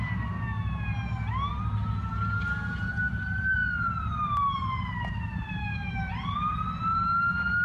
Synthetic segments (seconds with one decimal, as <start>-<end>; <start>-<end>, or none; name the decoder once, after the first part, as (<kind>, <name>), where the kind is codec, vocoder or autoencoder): 5.6-6.1 (autoencoder, DAC-VAE)